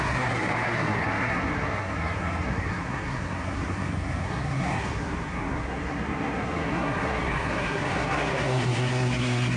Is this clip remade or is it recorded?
remade